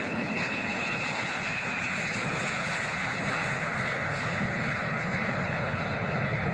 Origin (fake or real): fake